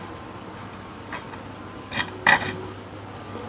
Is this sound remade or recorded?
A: recorded